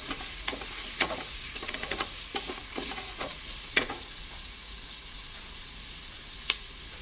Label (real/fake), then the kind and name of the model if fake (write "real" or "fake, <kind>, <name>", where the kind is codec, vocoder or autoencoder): fake, vocoder, Vocos